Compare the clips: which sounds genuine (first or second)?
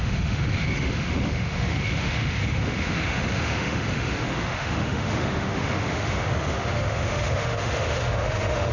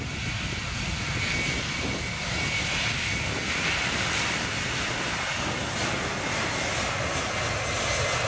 second